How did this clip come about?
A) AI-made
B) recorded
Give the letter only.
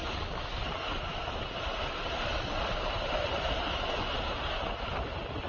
B